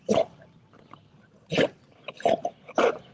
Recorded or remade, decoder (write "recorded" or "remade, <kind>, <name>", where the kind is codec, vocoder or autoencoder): recorded